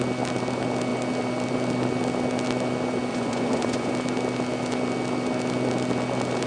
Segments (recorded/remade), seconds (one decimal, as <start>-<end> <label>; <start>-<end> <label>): 0.0-3.1 recorded; 3.1-3.9 remade; 3.9-6.5 recorded